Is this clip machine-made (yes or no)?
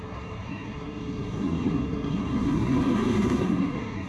yes